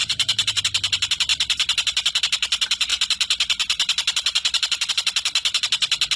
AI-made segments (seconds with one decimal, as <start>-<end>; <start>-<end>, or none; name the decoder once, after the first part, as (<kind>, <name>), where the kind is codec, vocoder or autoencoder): 0.0-0.6 (vocoder, BigVGAN v2)